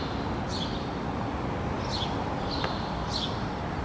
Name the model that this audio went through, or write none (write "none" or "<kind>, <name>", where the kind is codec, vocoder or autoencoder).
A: none